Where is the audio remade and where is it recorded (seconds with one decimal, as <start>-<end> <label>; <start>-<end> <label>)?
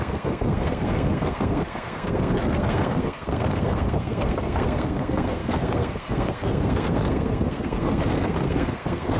0.0-9.2 remade